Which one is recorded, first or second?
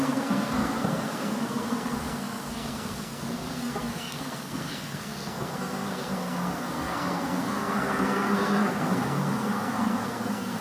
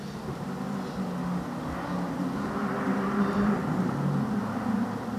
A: second